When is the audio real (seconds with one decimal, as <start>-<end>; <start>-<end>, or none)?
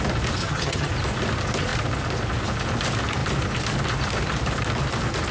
0.0-0.4; 0.9-5.3